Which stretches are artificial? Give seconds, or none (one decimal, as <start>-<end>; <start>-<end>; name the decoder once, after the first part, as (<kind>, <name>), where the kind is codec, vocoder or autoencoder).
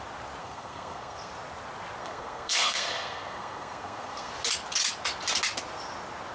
0.4-1.3 (codec, SNAC); 2.0-4.3